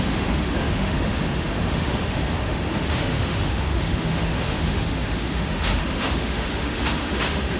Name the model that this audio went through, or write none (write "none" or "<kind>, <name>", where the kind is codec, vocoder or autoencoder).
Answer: autoencoder, DAC-VAE